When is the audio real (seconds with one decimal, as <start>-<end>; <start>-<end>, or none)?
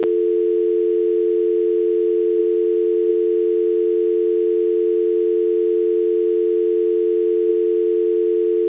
0.0-8.7